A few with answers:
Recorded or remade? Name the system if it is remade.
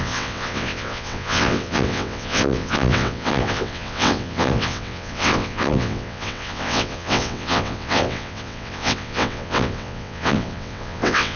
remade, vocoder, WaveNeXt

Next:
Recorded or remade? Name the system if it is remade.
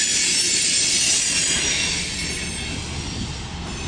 recorded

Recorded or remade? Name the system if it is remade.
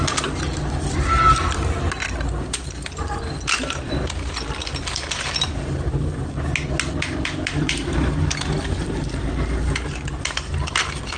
recorded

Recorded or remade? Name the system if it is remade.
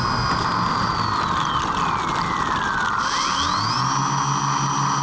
recorded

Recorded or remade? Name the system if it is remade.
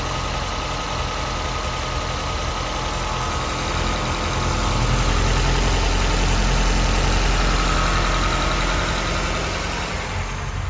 recorded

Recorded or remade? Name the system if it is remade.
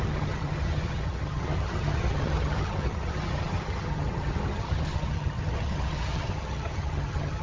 remade, vocoder, HiFi-GAN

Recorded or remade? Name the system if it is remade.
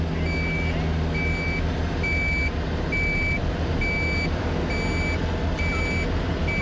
recorded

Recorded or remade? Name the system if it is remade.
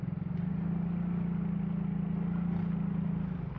recorded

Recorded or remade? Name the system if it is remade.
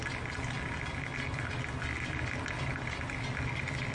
recorded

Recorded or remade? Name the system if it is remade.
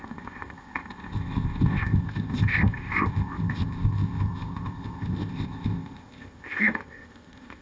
remade, codec, ZipCodec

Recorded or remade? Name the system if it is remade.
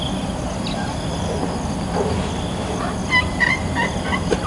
recorded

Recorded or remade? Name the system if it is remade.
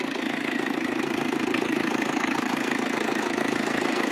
remade, codec, SNAC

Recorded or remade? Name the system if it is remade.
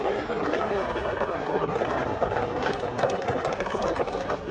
remade, codec, SNAC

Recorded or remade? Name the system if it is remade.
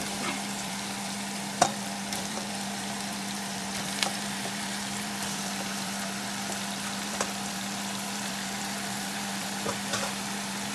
remade, vocoder, BigVGAN v2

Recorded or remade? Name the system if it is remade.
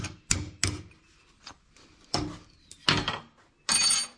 recorded